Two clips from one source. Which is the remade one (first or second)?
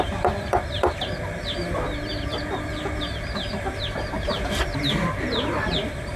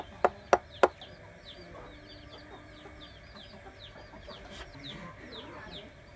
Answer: first